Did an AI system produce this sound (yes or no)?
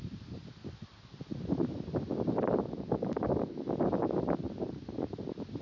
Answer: no